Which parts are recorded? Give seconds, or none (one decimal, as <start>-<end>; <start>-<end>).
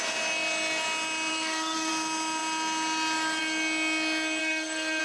0.0-1.3; 1.9-4.4